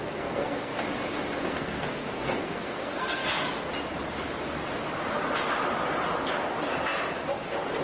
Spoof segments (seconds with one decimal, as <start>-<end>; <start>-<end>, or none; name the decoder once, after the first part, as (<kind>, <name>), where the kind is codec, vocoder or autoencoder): 0.0-0.7 (codec, SNAC); 1.4-3.2